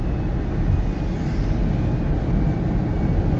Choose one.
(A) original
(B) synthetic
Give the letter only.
A